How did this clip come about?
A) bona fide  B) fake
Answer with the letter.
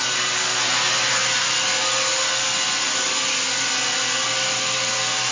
A